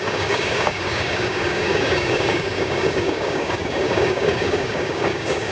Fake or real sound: fake